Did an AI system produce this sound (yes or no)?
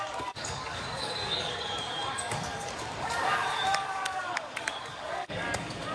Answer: yes